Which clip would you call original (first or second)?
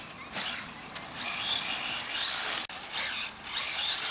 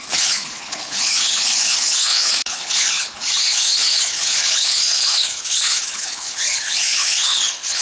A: first